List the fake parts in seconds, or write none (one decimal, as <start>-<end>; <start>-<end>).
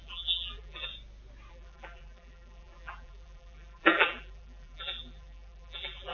0.0-0.9; 1.5-6.1